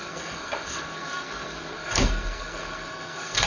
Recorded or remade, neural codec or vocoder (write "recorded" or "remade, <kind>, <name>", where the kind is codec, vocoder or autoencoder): remade, codec, SNAC